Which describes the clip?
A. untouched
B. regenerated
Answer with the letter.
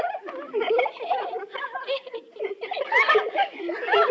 B